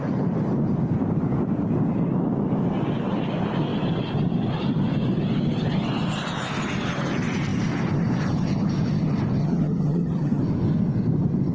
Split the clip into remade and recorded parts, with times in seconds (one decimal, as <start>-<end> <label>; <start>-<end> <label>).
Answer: 0.0-9.4 recorded; 9.4-10.4 remade; 10.4-11.5 recorded